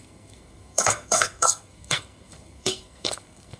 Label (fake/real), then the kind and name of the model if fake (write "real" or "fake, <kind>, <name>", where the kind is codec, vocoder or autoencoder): fake, codec, SNAC